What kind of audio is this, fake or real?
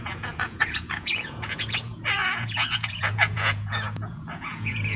fake